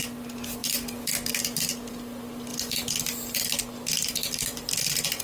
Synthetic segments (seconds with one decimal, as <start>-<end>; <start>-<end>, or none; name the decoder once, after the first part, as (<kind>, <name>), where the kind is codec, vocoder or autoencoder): none